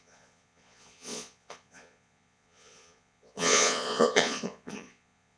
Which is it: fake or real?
fake